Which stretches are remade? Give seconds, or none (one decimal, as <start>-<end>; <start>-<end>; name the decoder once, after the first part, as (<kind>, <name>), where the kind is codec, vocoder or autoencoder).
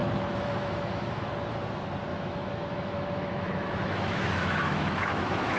0.0-1.3 (autoencoder, DAC-VAE); 2.1-5.6